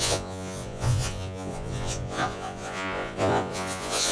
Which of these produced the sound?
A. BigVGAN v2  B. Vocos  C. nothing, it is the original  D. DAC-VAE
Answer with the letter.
B